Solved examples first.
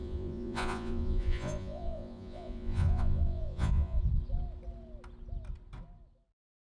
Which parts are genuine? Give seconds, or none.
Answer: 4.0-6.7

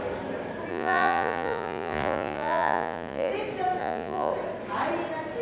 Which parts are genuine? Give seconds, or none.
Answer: 0.0-0.7; 3.3-3.8; 4.3-5.4

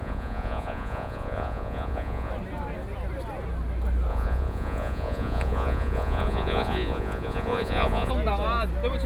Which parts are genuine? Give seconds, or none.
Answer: 2.3-4.1; 8.1-9.1

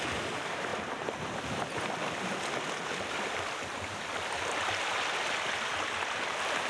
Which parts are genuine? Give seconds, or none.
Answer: 0.0-6.7

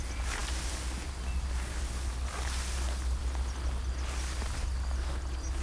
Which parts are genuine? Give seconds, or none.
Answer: 0.0-5.6

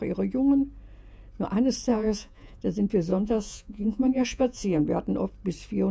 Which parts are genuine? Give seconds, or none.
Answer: 0.0-1.9; 2.6-3.1; 4.8-5.9